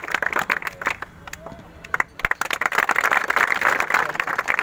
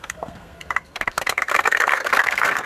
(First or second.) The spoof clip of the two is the second